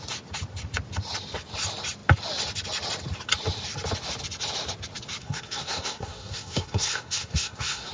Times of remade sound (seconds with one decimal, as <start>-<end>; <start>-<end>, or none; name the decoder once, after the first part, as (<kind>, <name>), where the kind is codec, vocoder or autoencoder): 5.2-7.9 (codec, SNAC)